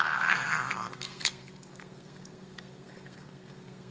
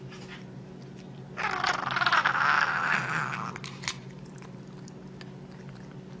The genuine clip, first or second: second